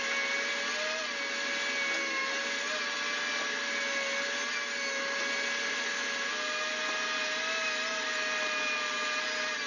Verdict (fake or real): real